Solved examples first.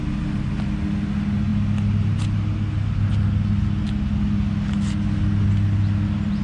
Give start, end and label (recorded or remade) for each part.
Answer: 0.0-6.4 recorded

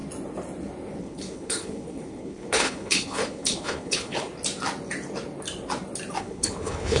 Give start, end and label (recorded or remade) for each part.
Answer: 0.0-1.0 recorded; 1.0-4.3 remade; 4.3-6.2 recorded; 6.2-7.0 remade